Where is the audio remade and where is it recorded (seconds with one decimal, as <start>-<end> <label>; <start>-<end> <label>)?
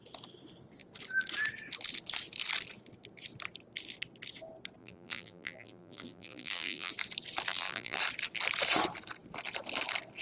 0.0-4.8 recorded; 4.8-6.9 remade; 6.9-7.5 recorded; 7.5-8.0 remade; 8.0-10.2 recorded